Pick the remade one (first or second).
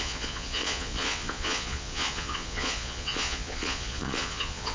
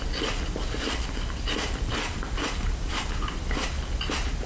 first